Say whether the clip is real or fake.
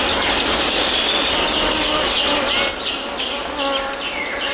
real